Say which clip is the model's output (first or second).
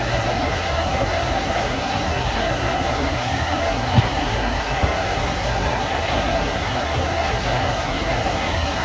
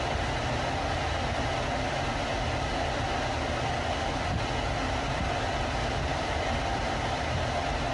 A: first